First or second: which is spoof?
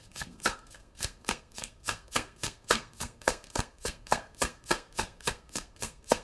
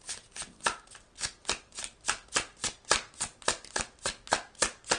first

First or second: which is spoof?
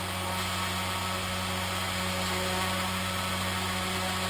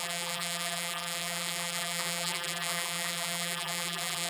second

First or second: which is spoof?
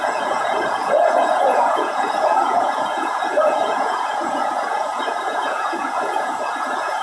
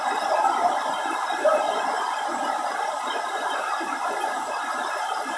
first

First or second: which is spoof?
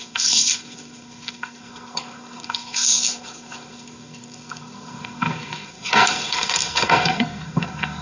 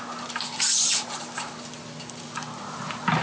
first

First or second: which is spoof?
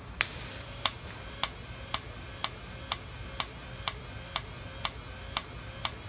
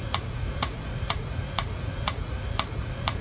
second